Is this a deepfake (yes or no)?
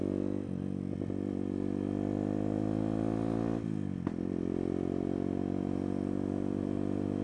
no